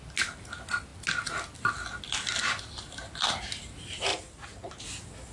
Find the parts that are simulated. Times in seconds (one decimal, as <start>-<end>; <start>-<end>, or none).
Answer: 4.1-4.8